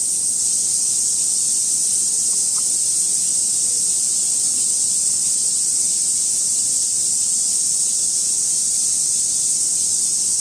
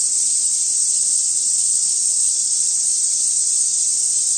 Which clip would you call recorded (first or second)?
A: first